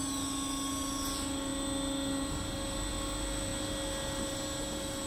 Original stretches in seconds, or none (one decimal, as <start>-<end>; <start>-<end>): 0.0-5.1